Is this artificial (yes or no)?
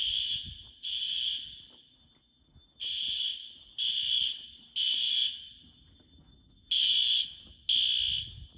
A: no